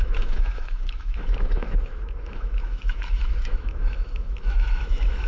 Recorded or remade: remade